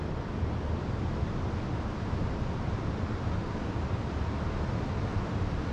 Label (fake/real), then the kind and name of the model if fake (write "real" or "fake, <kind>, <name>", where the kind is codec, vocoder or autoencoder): real